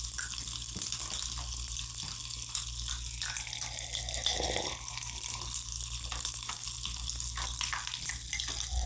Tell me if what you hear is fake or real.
real